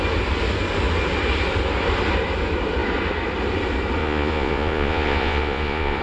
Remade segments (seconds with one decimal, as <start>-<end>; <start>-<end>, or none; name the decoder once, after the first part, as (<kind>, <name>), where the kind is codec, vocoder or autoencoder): 4.0-6.0 (vocoder, Vocos)